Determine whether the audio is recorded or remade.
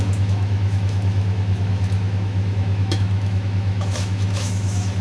remade